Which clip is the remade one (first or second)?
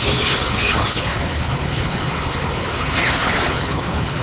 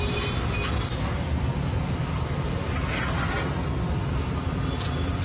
first